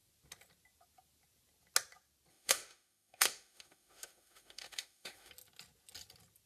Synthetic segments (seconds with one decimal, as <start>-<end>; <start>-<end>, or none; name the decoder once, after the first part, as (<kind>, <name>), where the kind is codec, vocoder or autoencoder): 2.3-5.3 (autoencoder, DAC-VAE)

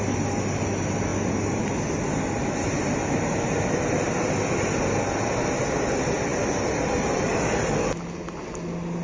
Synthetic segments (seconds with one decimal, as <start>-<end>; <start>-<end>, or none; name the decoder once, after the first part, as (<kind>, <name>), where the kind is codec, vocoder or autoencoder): none

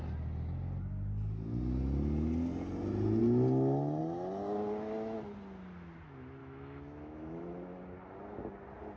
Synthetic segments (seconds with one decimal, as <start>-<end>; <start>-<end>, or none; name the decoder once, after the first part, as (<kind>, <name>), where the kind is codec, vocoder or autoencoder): 6.4-7.4 (autoencoder, DAC-VAE)

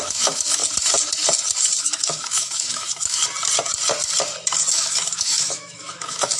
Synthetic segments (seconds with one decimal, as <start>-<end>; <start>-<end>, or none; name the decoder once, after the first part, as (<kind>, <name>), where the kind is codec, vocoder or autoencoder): 0.0-0.6 (autoencoder, DAC-VAE); 1.8-3.2; 4.7-6.4

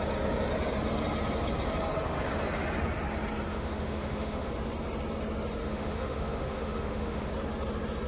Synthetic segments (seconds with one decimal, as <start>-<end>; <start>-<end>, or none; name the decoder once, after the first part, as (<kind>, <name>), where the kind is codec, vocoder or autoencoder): 3.5-4.5 (autoencoder, DAC-VAE); 5.6-7.3

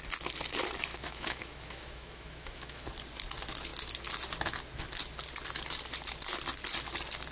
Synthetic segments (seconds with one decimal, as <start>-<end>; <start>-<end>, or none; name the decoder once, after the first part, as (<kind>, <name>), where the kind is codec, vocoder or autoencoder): 0.9-2.9 (autoencoder, DAC-VAE)